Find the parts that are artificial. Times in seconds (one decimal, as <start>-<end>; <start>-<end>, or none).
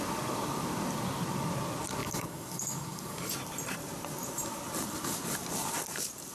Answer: 2.0-3.3